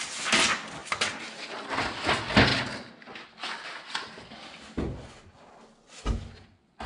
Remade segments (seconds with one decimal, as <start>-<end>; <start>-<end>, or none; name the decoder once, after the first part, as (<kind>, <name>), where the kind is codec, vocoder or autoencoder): none